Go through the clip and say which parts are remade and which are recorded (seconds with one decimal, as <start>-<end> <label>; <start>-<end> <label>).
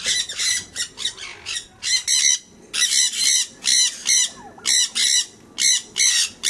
0.0-6.5 recorded